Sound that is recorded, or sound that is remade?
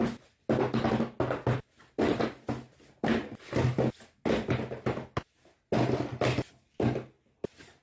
recorded